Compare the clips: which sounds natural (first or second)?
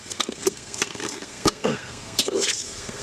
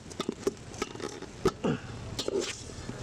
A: second